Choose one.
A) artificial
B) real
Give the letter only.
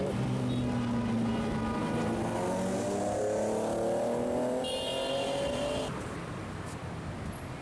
B